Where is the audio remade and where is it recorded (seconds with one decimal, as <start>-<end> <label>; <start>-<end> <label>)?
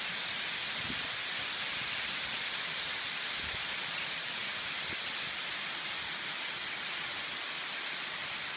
0.0-8.6 recorded